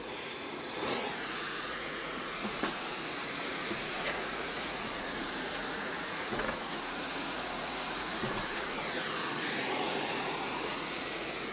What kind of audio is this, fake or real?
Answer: fake